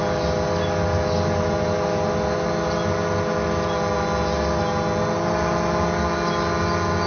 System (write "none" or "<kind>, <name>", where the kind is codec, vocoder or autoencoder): none